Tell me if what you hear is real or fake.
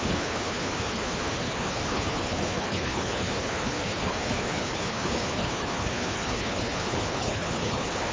fake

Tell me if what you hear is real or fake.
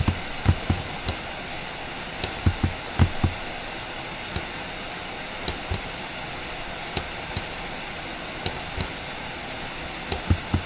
real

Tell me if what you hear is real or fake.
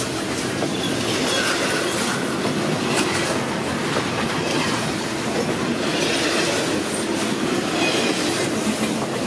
real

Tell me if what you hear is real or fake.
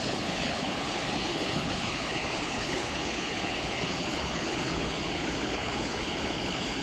fake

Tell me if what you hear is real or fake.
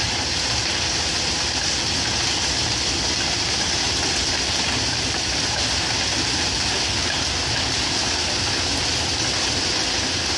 real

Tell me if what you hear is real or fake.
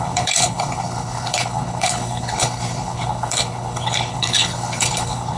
fake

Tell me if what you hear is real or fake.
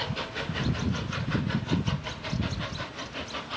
real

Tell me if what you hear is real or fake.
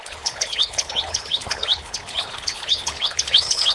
fake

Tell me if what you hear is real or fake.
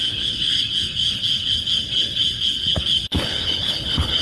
fake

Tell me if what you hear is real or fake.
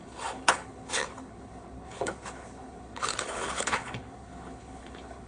fake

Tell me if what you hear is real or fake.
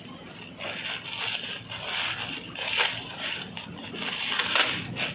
real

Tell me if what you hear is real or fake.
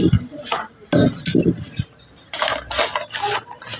real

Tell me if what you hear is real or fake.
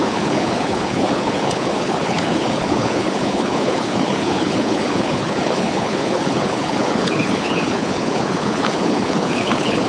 fake